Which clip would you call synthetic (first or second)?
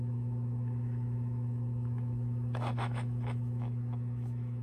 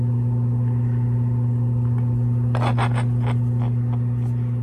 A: first